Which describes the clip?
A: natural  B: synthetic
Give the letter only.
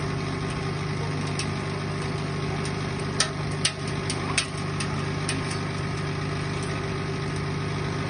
A